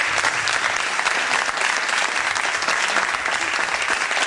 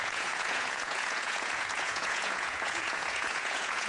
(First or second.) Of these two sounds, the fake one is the second